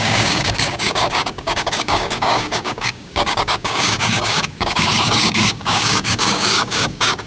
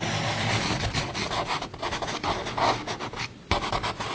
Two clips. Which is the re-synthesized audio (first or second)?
first